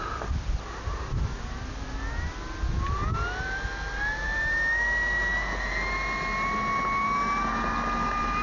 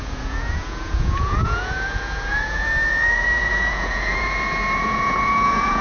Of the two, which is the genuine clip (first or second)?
first